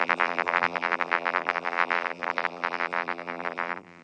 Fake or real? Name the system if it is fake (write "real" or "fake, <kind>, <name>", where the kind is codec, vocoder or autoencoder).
fake, vocoder, BigVGAN v2